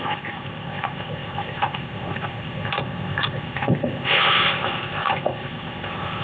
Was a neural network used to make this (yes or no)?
yes